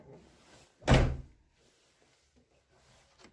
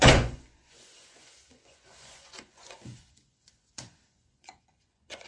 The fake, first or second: second